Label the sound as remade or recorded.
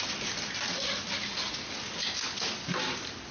recorded